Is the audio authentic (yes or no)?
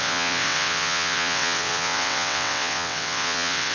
no